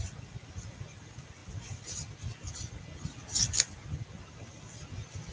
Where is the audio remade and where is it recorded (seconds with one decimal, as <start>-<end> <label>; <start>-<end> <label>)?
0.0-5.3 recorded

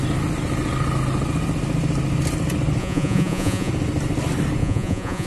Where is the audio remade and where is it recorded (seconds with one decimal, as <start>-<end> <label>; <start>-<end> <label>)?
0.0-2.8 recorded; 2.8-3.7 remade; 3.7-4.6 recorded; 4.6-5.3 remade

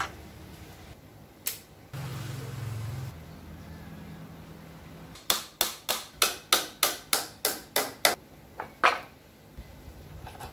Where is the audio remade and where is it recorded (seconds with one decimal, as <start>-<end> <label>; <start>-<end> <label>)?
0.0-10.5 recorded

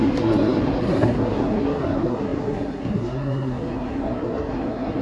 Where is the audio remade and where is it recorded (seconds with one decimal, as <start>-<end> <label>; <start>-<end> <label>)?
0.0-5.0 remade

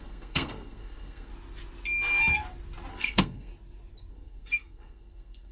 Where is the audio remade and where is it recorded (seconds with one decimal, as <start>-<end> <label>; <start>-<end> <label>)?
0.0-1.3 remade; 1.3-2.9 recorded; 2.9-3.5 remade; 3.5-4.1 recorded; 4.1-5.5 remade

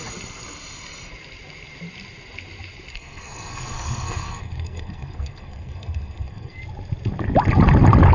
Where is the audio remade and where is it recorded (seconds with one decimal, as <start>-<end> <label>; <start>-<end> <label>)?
0.0-2.9 recorded; 2.9-6.6 remade; 6.6-8.1 recorded

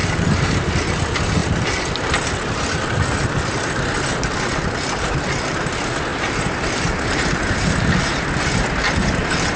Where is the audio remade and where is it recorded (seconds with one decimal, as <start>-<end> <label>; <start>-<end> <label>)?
0.0-0.6 remade; 0.6-6.1 recorded; 6.1-8.0 remade; 8.0-9.6 recorded

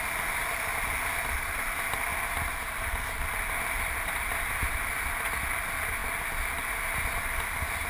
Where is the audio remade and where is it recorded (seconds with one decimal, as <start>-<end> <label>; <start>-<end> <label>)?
0.0-7.9 recorded